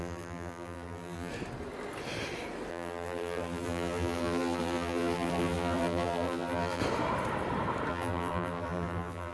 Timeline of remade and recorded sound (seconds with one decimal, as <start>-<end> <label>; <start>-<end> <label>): 0.0-1.3 remade; 1.3-2.7 recorded; 2.7-6.8 remade; 6.8-7.9 recorded; 7.9-9.3 remade